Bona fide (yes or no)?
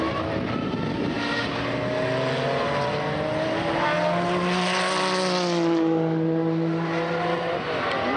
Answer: yes